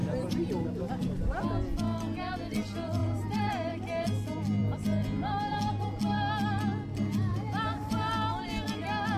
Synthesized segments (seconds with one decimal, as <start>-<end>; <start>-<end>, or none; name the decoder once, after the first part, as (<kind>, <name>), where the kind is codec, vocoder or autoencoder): 0.0-0.9 (vocoder, BigVGAN v2); 3.0-3.5; 7.3-8.1

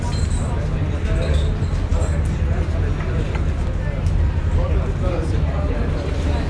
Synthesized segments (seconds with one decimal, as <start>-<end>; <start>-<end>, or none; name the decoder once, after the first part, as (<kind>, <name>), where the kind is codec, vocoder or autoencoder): none

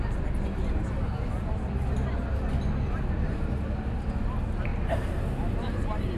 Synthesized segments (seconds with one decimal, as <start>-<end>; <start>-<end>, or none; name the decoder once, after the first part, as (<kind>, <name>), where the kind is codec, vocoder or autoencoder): 4.7-6.2 (vocoder, BigVGAN v2)